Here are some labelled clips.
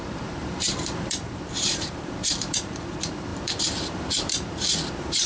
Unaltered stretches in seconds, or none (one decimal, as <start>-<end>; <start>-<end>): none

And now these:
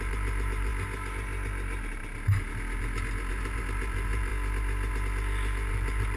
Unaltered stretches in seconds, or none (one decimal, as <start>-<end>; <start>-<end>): 0.7-3.3; 4.3-5.7

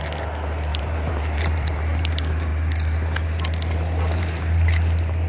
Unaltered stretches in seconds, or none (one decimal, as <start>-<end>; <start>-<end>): 0.0-0.7; 2.1-5.3

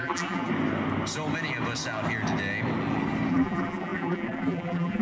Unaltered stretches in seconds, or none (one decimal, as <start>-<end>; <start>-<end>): 0.5-3.3

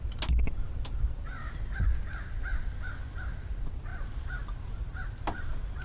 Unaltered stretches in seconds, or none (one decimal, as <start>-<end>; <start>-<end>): 0.0-5.8

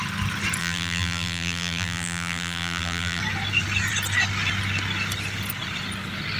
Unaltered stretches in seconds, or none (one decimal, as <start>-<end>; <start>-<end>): 0.0-0.6; 3.2-6.4